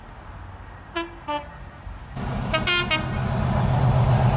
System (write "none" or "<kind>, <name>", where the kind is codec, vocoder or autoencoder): none